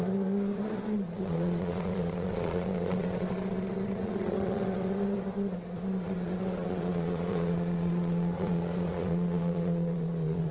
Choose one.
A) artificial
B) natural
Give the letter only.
A